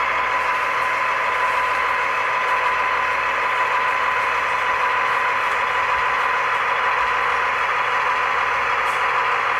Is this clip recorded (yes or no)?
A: yes